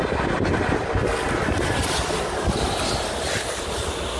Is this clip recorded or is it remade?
recorded